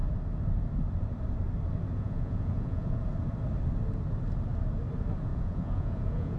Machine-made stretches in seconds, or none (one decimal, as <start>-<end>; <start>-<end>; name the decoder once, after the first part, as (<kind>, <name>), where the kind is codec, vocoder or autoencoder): 1.9-3.0 (vocoder, Vocos); 5.3-6.4